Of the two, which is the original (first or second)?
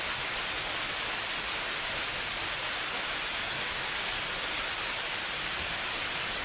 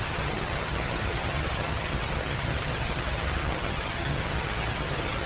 first